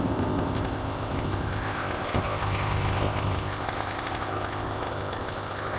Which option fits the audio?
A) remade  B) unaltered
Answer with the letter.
A